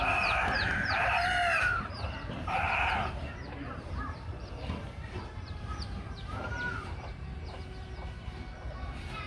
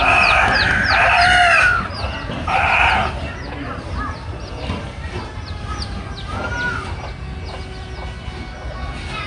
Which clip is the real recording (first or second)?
second